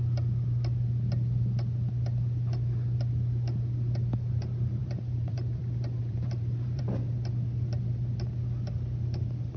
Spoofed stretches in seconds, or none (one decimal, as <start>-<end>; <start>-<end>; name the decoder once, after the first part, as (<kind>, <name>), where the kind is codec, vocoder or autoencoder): 4.8-5.6 (vocoder, BigVGAN v2); 6.0-6.8